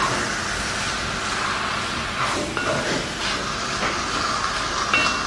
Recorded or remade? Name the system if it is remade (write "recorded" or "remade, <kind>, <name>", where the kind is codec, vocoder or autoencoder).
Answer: recorded